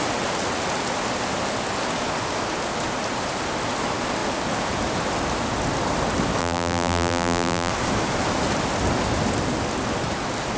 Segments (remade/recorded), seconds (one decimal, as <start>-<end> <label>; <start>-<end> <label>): 0.0-6.4 recorded; 6.4-7.7 remade; 7.7-10.6 recorded

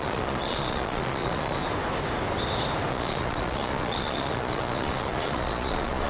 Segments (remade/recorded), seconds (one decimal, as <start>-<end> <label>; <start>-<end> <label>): 0.0-1.6 remade; 1.6-2.9 recorded; 2.9-6.1 remade